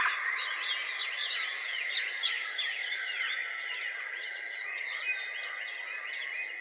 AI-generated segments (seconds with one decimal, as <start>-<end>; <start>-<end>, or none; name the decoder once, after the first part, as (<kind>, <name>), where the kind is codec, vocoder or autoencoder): none